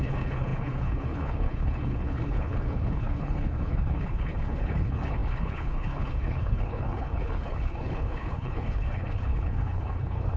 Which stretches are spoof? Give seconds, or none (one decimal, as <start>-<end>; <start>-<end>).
0.0-10.4